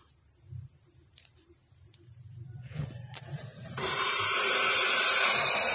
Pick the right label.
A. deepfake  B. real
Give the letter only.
A